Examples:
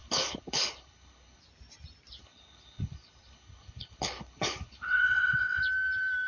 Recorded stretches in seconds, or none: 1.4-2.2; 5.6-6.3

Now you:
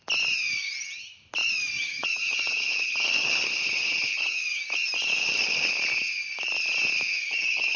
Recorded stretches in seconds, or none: 0.0-1.8; 4.6-5.2; 5.7-7.2

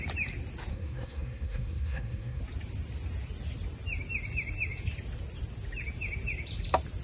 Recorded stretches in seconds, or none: 0.0-0.7; 2.4-7.0

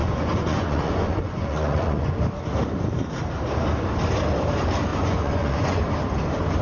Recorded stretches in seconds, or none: 2.1-4.9; 5.8-6.6

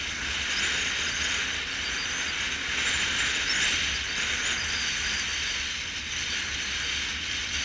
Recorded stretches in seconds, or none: 0.0-7.6

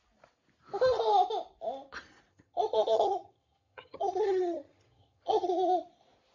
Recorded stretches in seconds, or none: 0.0-2.3; 5.5-6.3